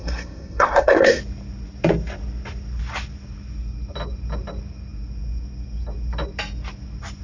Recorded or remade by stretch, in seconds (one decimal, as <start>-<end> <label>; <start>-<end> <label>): 0.0-1.2 remade; 1.2-7.2 recorded